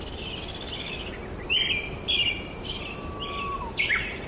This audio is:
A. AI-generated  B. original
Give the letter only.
B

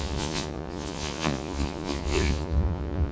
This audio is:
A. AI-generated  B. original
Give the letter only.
A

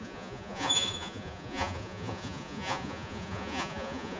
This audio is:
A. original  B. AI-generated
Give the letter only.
B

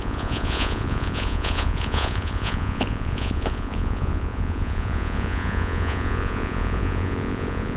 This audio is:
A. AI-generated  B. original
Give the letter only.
A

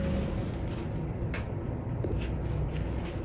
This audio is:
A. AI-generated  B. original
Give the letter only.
B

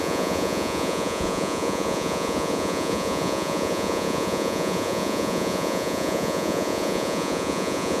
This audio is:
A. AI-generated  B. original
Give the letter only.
A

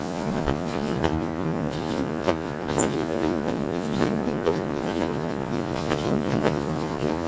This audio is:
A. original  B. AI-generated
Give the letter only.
B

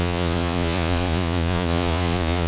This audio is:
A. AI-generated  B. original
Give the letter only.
A